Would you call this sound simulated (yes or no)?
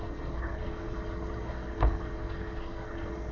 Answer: yes